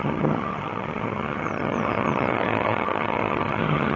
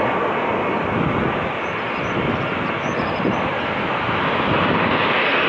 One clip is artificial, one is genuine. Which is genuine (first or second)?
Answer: second